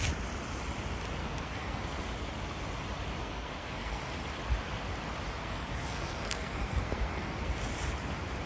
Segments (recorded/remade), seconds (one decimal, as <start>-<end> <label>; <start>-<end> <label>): 0.0-1.2 recorded; 1.2-2.0 remade; 2.0-3.2 recorded; 3.2-4.0 remade; 4.0-5.4 recorded; 5.4-7.5 remade; 7.5-8.5 recorded

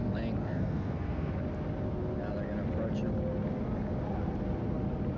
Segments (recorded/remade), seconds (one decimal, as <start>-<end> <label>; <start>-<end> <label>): 0.0-0.4 recorded; 0.4-1.3 remade; 1.3-5.2 recorded